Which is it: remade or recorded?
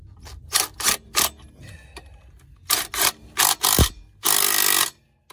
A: recorded